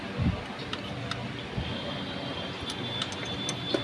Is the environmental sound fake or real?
real